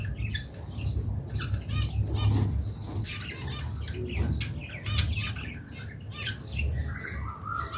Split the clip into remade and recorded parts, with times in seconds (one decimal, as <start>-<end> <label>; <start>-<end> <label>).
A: 0.0-7.8 recorded